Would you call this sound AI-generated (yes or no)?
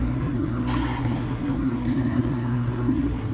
yes